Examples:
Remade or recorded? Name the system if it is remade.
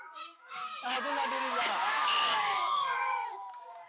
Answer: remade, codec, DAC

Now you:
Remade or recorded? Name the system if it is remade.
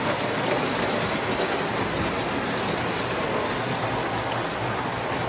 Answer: recorded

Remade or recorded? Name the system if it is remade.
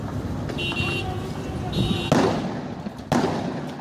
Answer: recorded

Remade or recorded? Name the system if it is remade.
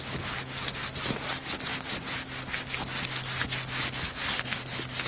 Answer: recorded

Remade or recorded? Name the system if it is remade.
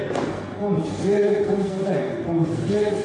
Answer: remade, codec, SNAC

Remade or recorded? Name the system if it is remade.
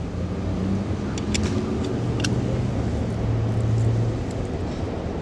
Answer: recorded